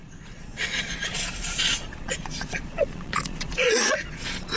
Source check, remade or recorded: remade